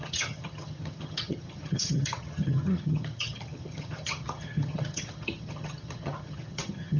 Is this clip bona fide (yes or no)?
no